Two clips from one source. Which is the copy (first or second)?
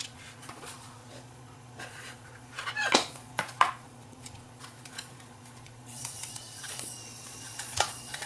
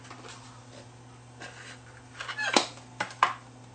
first